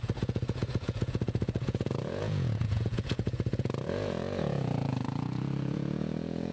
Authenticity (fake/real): fake